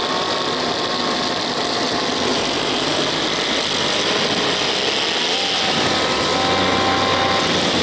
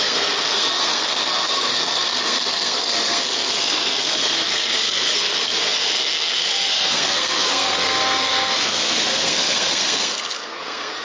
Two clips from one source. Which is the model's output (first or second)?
second